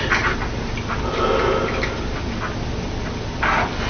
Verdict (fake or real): real